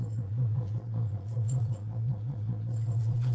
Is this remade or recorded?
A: remade